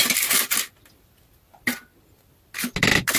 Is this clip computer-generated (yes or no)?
no